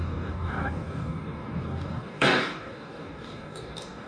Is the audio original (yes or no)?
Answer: no